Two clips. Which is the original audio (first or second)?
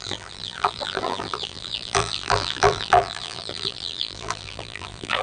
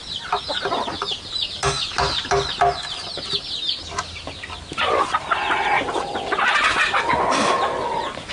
second